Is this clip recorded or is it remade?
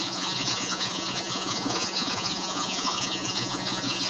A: remade